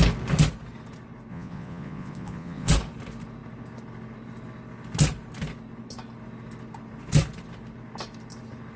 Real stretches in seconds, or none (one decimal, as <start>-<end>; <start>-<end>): 0.0-1.3; 2.7-8.8